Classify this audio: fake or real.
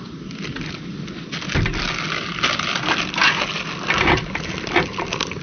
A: real